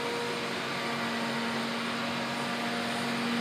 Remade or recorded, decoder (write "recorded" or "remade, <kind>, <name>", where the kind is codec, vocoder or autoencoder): recorded